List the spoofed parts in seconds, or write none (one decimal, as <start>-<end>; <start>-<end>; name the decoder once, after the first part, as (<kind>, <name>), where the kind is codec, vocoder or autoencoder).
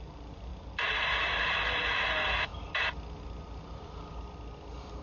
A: none